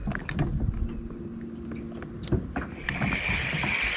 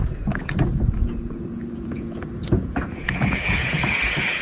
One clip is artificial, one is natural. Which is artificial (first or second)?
second